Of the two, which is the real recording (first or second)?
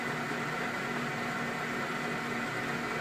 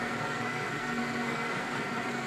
first